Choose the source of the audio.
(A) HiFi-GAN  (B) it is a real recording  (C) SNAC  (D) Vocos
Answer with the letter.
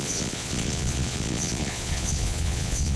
D